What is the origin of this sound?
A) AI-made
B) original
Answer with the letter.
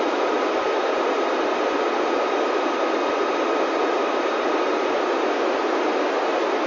B